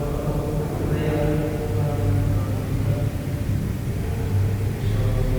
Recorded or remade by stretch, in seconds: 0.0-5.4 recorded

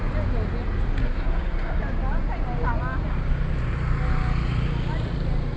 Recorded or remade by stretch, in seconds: 0.0-1.0 recorded; 1.0-1.8 remade; 1.8-5.6 recorded

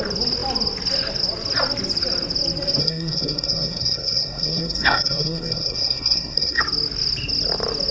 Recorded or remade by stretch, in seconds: 0.0-2.8 recorded; 2.8-6.6 remade; 6.6-7.9 recorded

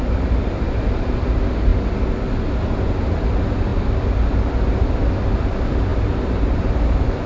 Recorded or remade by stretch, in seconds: 0.0-3.7 recorded; 3.7-4.5 remade; 4.5-7.3 recorded

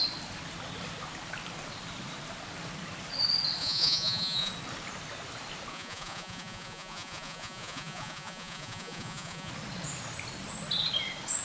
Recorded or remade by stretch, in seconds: 0.0-3.6 recorded; 3.6-4.5 remade; 4.5-5.7 recorded; 5.7-9.5 remade; 9.5-11.4 recorded

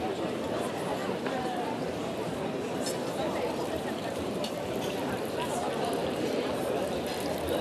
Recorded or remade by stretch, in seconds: 0.0-1.0 recorded; 1.0-2.4 remade; 2.4-3.6 recorded; 3.6-5.6 remade; 5.6-6.0 recorded; 6.0-6.7 remade; 6.7-7.6 recorded

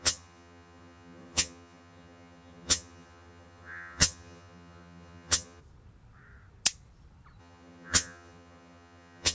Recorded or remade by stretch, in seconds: 0.0-5.6 remade; 5.6-7.4 recorded; 7.4-9.3 remade

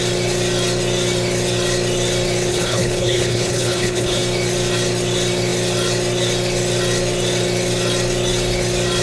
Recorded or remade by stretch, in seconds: 0.0-2.5 recorded; 2.5-4.2 remade; 4.2-9.0 recorded